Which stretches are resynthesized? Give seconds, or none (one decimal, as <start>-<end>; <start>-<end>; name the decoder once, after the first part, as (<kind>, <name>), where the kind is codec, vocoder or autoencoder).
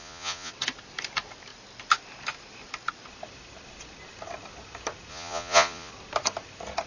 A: 0.0-0.5 (vocoder, Vocos); 5.1-5.9